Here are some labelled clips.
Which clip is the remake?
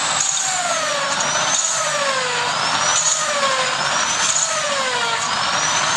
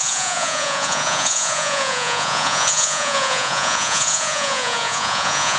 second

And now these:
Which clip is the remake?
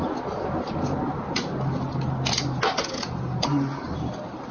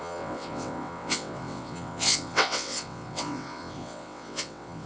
second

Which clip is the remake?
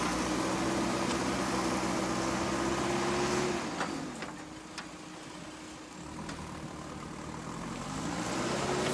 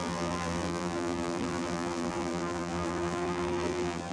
second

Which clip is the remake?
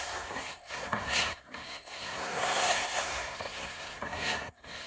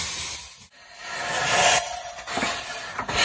first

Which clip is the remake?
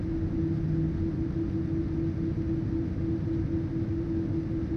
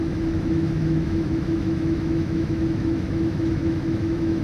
second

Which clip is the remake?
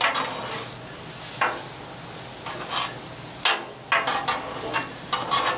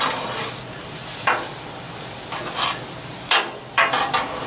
second